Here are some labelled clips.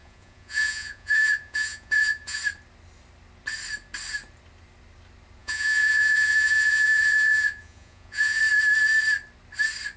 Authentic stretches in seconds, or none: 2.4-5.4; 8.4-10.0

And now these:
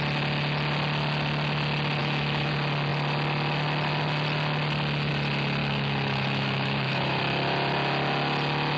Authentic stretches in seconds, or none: 0.0-2.0; 2.5-5.6; 7.2-8.8

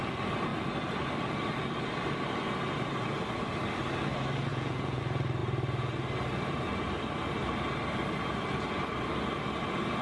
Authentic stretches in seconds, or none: 0.0-4.5; 5.0-10.0

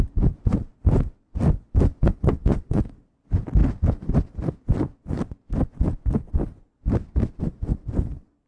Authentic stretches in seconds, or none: 0.0-1.9; 2.8-8.5